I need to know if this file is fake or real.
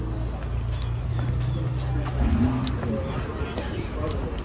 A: real